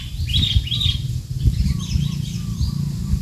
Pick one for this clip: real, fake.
real